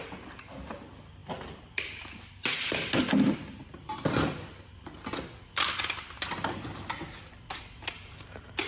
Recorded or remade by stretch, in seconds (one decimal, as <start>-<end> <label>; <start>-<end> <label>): 0.0-8.7 recorded